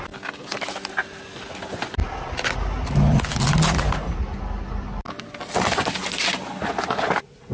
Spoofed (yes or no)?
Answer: no